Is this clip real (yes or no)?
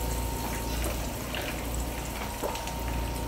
yes